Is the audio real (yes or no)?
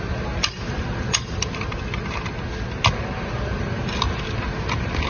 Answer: yes